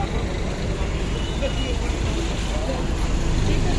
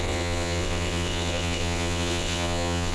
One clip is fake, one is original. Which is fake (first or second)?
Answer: second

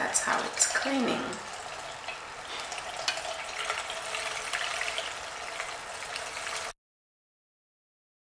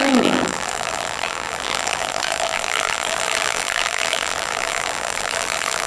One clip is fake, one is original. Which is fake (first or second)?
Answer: second